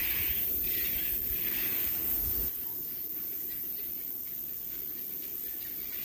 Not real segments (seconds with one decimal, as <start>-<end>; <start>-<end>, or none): 0.0-1.0; 1.6-3.9